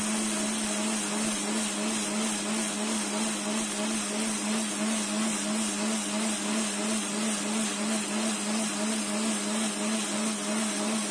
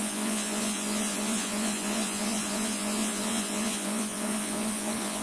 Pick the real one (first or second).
first